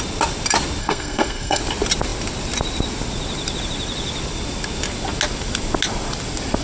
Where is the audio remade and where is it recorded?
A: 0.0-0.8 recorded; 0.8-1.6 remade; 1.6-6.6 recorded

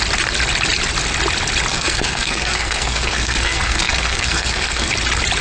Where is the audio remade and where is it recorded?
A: 0.0-1.7 recorded; 1.7-4.9 remade; 4.9-5.4 recorded

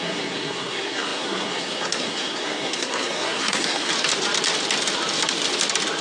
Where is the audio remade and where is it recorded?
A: 0.0-3.9 remade; 3.9-6.0 recorded

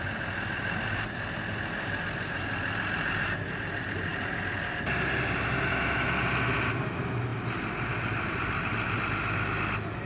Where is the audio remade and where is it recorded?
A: 0.0-10.1 recorded

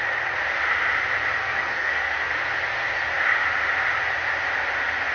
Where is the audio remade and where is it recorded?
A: 0.0-1.4 recorded; 1.4-2.3 remade; 2.3-5.1 recorded